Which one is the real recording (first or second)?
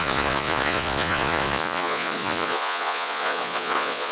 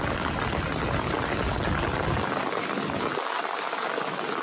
second